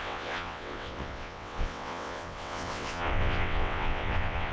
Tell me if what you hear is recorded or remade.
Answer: remade